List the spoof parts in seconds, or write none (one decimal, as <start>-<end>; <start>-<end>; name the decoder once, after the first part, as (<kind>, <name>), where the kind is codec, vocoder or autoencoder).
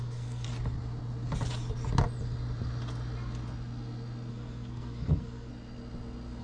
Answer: 0.0-0.5 (codec, SNAC); 4.3-5.5